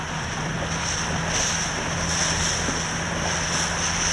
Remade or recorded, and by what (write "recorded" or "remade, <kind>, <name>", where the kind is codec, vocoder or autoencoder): recorded